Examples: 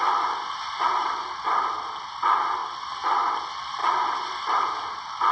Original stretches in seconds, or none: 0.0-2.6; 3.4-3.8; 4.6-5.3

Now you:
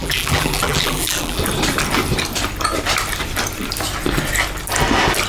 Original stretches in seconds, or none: 1.4-5.3

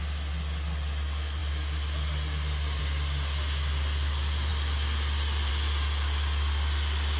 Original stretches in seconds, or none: 0.0-7.2

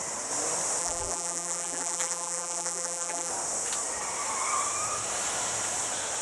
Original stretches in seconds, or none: 0.0-0.8; 3.3-6.2